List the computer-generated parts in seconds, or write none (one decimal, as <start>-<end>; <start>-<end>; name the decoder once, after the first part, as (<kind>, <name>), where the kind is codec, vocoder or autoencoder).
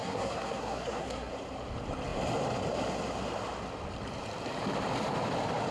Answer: 0.0-1.3 (codec, SNAC)